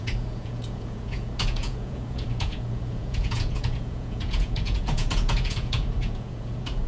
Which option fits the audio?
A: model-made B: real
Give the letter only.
A